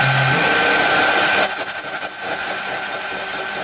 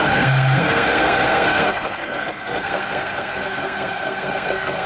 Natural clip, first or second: first